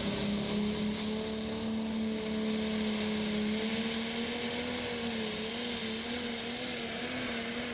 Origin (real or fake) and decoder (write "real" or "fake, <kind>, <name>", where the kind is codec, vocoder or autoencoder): real